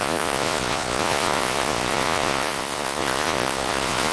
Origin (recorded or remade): remade